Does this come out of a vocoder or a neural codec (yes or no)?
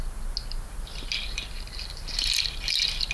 no